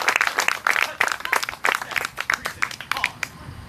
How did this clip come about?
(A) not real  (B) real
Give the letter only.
B